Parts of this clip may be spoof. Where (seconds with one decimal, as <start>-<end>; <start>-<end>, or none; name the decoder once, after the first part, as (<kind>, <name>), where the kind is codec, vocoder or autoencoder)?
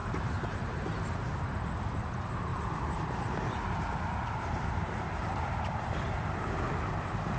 0.0-1.2 (vocoder, BigVGAN v2); 2.5-3.3; 4.8-6.1